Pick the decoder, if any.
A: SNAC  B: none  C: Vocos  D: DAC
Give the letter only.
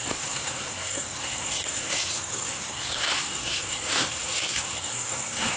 A